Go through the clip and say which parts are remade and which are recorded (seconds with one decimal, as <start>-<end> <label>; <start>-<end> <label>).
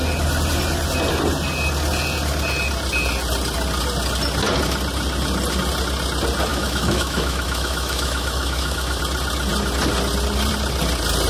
0.0-6.5 recorded; 6.5-9.0 remade; 9.0-11.3 recorded